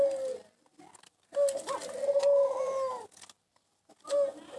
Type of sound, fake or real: real